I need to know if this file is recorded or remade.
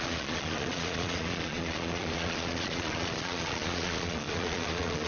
remade